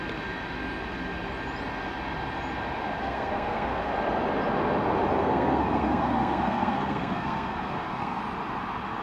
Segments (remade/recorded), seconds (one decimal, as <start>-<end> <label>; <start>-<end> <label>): 0.0-3.0 recorded; 3.0-3.9 remade; 3.9-5.2 recorded; 5.2-8.2 remade; 8.2-9.0 recorded